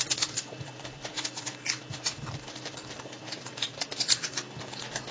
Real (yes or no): yes